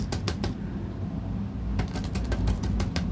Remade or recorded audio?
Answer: recorded